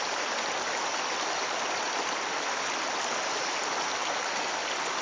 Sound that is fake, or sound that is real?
real